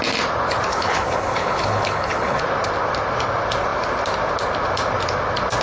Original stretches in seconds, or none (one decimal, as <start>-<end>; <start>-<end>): 0.0-0.7; 2.4-5.6